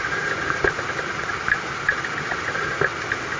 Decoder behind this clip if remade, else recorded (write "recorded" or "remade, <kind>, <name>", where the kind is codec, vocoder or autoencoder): recorded